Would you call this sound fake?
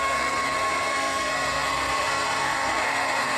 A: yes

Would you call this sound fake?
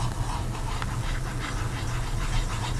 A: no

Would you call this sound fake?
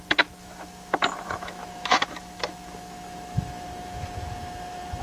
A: yes